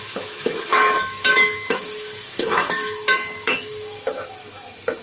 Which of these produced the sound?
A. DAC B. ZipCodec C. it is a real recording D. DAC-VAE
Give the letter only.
D